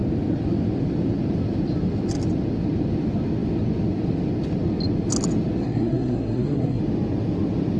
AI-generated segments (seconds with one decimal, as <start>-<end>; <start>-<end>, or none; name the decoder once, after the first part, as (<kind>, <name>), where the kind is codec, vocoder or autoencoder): 5.6-6.8 (codec, SNAC)